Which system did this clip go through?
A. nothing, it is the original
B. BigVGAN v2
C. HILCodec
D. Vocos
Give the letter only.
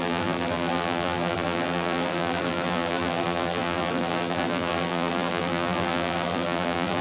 B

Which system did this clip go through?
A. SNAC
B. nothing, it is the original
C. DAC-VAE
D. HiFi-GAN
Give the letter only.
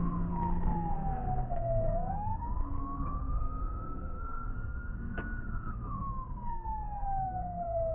A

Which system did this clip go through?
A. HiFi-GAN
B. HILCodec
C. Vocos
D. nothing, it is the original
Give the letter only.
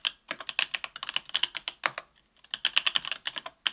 D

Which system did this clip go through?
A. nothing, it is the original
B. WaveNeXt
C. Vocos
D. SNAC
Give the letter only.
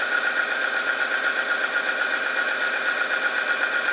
A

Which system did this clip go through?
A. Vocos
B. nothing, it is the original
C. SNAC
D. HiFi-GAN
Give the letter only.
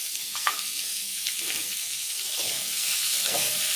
C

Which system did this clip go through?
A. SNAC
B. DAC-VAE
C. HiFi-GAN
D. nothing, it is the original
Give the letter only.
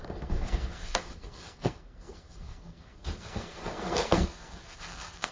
A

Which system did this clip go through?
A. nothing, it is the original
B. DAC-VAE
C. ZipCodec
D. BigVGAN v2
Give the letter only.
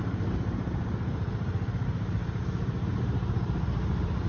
D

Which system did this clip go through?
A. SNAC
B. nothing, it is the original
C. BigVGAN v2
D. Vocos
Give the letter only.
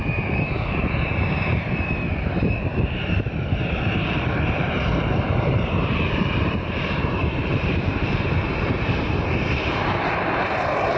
C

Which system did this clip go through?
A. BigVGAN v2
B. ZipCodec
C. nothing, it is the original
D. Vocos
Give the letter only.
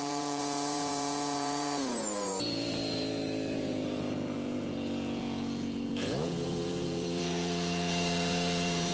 D